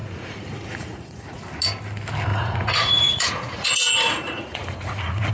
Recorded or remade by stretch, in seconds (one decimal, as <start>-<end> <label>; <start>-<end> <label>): 0.0-1.4 remade; 1.4-2.3 recorded; 2.3-5.3 remade